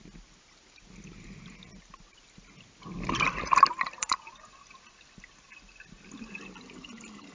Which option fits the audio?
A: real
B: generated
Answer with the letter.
A